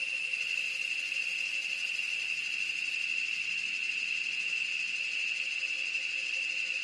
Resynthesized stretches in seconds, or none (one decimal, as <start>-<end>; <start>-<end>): none